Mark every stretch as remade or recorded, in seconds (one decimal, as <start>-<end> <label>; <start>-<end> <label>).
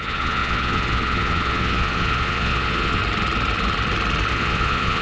0.0-3.0 remade; 3.0-4.3 recorded; 4.3-5.0 remade